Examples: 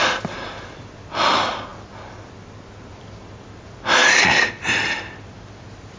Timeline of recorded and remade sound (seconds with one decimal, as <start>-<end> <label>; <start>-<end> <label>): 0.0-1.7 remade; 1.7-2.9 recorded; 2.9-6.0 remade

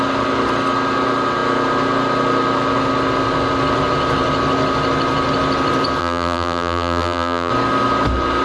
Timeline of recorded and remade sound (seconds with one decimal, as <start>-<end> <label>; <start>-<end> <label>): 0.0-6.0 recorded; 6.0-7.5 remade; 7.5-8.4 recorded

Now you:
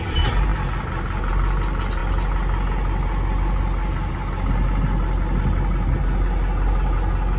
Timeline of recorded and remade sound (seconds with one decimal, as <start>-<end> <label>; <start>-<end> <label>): 0.0-7.4 recorded

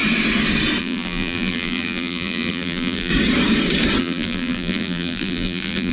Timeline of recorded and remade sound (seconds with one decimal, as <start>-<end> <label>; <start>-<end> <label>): 0.0-0.8 recorded; 0.8-3.1 remade; 3.1-4.0 recorded; 4.0-5.9 remade

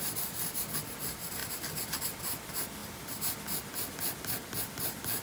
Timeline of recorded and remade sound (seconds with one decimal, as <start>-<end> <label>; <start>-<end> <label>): 0.0-2.8 recorded; 2.8-3.4 remade; 3.4-5.2 recorded

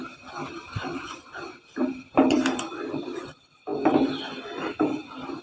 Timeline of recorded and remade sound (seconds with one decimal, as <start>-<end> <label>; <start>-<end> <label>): 0.0-3.2 remade; 3.2-5.4 recorded